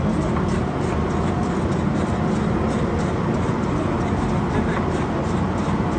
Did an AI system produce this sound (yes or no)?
no